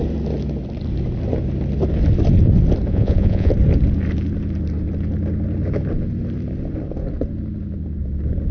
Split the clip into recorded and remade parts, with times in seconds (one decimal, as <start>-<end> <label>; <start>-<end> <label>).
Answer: 0.0-2.9 recorded; 2.9-3.5 remade; 3.5-8.5 recorded